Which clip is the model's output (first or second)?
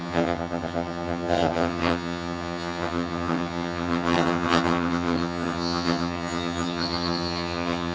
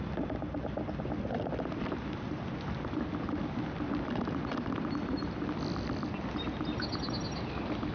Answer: first